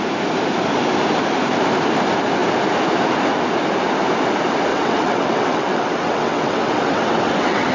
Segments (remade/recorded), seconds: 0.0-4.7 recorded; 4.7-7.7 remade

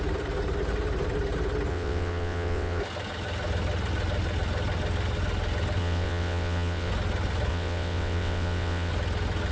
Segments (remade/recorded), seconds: 0.0-1.7 recorded; 1.7-2.8 remade; 2.8-5.8 recorded; 5.8-6.9 remade; 6.9-7.5 recorded; 7.5-8.9 remade; 8.9-9.5 recorded

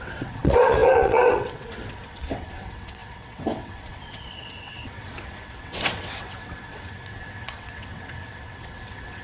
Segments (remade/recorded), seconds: 0.0-9.2 remade

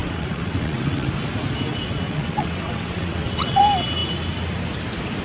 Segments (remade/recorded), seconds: 0.0-1.1 remade; 1.1-1.7 recorded; 1.7-3.6 remade; 3.6-5.2 recorded

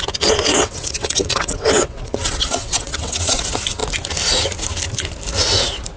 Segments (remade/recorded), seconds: 0.0-0.5 recorded; 0.5-3.4 remade; 3.4-6.0 recorded

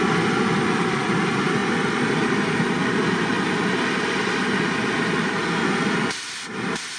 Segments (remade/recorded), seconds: 0.0-7.0 recorded

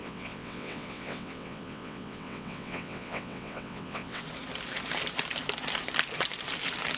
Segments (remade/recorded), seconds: 0.0-4.2 remade; 4.2-7.0 recorded